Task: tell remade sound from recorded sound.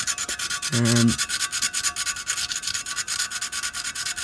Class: recorded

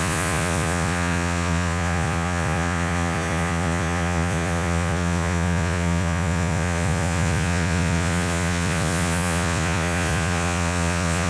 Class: remade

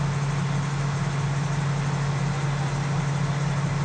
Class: recorded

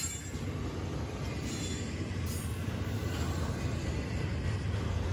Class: recorded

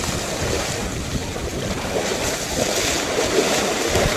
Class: recorded